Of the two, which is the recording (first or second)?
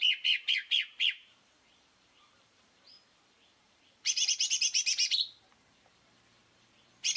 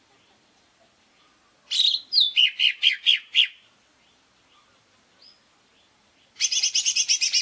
second